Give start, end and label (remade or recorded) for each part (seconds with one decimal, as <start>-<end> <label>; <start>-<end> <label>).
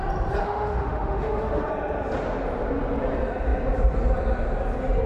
0.0-0.4 recorded; 0.4-1.7 remade; 1.7-5.1 recorded